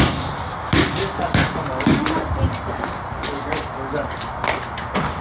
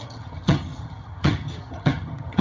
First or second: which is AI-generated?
second